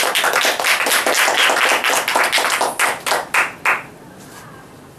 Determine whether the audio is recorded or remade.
recorded